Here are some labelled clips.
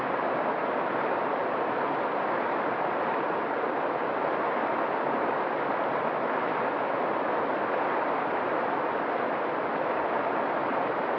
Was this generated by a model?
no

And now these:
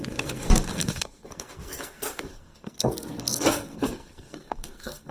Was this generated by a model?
yes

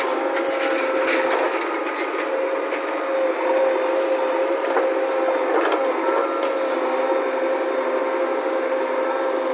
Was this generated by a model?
no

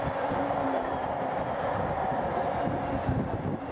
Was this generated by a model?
no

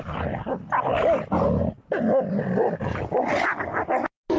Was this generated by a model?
no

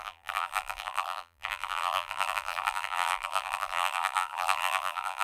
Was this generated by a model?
yes